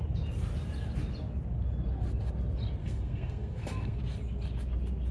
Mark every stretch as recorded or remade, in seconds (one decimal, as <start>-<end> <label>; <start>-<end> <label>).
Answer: 0.0-2.8 recorded; 2.8-4.0 remade; 4.0-5.1 recorded